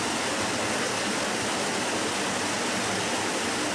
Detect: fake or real real